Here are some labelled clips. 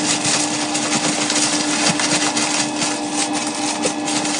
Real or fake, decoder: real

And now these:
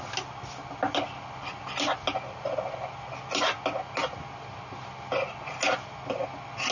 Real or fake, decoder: real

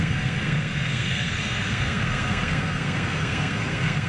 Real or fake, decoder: fake, codec, SNAC